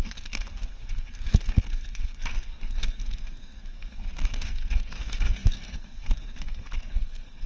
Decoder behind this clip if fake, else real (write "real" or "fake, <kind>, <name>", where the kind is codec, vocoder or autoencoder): fake, codec, SNAC